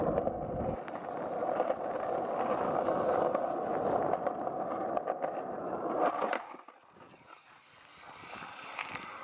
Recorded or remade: recorded